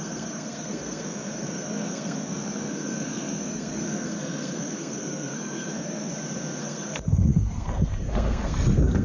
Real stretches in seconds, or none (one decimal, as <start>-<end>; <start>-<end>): 6.1-6.6